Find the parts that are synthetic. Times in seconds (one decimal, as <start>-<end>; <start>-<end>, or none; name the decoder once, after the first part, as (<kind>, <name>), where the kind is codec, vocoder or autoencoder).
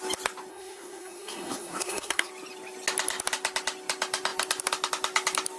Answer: 0.5-2.3 (codec, SNAC)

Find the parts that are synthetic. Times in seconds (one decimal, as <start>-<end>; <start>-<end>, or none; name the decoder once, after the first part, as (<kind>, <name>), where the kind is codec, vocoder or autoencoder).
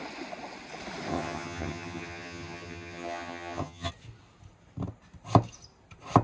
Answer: 1.1-3.9 (vocoder, HiFi-GAN)